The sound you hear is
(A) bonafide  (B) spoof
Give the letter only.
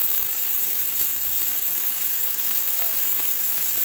B